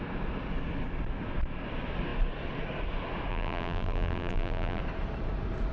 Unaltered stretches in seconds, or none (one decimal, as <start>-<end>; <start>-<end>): 0.0-3.3; 4.8-5.7